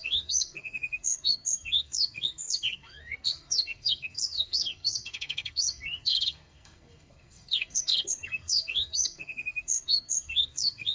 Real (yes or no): no